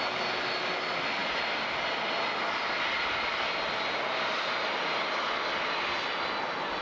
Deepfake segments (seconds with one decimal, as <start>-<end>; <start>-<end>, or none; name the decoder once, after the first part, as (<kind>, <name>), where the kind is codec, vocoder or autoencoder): none